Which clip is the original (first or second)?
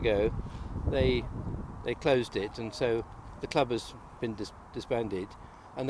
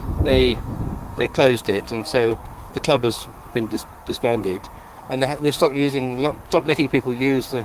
first